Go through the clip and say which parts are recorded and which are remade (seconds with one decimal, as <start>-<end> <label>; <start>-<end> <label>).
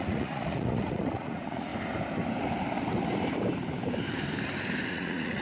0.0-1.7 remade; 1.7-4.9 recorded; 4.9-5.4 remade